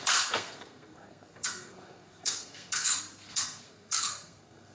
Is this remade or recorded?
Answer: remade